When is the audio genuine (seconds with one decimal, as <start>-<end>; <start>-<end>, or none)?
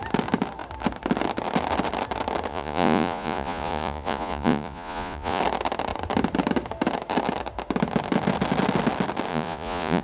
0.0-2.5; 5.4-9.3